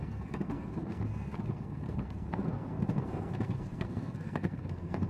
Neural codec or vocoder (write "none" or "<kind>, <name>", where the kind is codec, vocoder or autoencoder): codec, SNAC